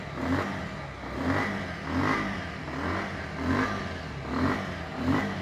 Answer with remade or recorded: recorded